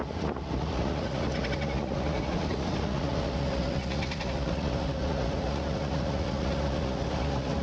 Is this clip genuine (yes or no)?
no